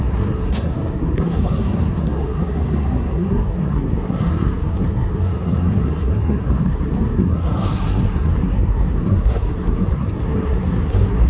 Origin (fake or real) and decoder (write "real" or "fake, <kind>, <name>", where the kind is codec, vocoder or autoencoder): fake, codec, SNAC